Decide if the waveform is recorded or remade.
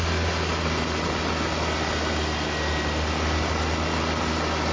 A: recorded